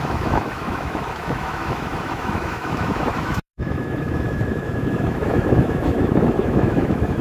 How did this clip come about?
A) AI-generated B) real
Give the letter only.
A